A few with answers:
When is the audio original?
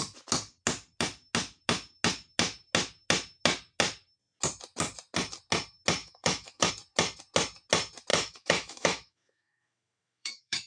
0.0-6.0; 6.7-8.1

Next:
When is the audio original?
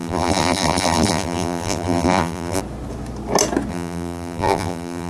2.6-3.7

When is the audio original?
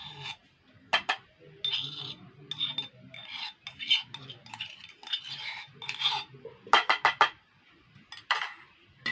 0.0-9.1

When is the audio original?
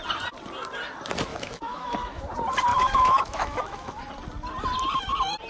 0.0-1.3; 2.3-2.7; 4.0-5.5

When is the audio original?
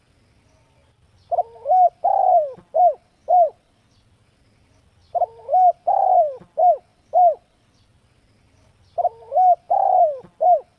0.0-10.8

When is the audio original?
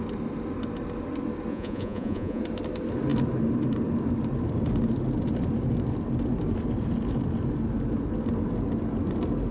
0.0-1.5; 2.4-9.5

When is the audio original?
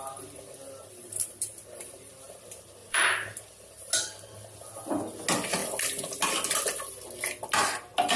0.0-0.8; 2.1-2.8; 3.4-8.2